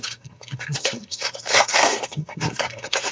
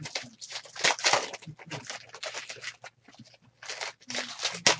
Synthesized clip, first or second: first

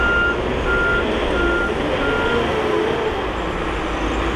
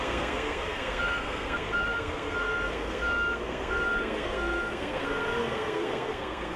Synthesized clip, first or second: second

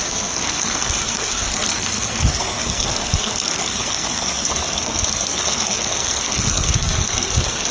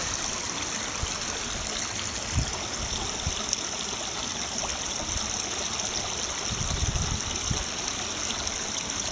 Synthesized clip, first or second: first